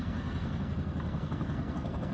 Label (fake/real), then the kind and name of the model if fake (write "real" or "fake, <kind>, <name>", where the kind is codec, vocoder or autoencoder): fake, codec, SNAC